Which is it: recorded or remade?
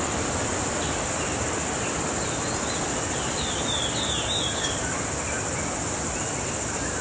recorded